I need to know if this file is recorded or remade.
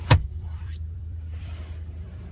remade